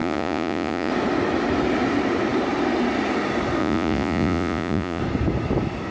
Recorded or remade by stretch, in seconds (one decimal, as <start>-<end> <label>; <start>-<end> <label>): 0.0-0.9 remade; 0.9-3.6 recorded; 3.6-5.0 remade; 5.0-5.9 recorded